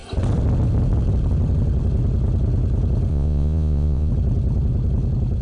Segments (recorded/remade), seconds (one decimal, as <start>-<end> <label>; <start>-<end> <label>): 0.0-3.1 recorded; 3.1-4.1 remade; 4.1-5.4 recorded